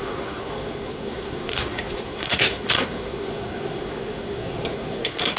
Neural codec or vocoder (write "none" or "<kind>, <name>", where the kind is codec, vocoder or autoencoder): codec, SNAC